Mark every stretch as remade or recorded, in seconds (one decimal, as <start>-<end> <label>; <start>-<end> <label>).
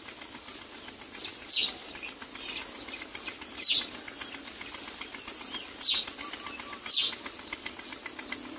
0.0-8.6 recorded